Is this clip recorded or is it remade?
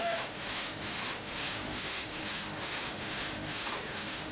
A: remade